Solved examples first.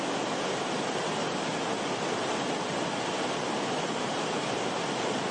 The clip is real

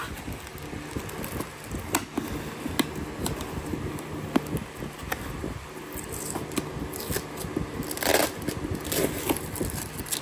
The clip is real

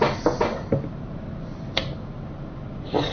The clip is real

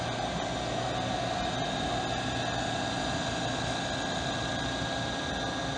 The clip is real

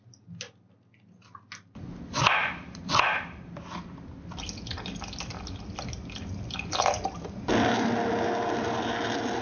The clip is real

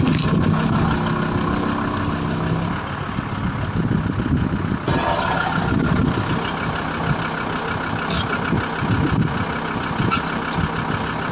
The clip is real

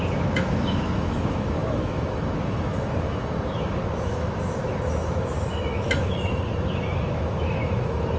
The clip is fake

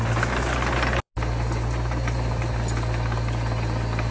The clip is real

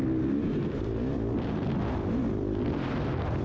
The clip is real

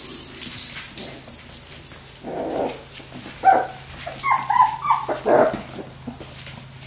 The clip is real